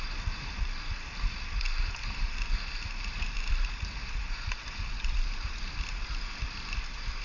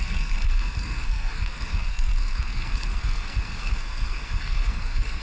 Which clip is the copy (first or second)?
second